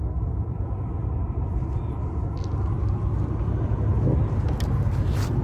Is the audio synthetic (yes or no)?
no